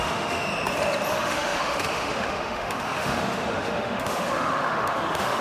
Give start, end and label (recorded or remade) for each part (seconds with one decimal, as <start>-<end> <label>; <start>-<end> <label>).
0.0-0.5 remade; 0.5-1.1 recorded; 1.1-5.4 remade